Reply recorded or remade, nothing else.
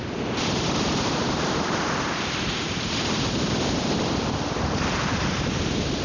recorded